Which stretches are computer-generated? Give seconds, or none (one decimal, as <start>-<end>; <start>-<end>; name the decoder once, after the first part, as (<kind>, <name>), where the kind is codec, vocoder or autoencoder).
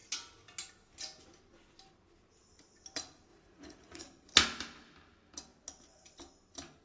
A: 3.3-4.0 (vocoder, Vocos)